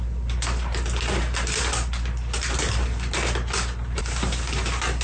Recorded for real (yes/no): yes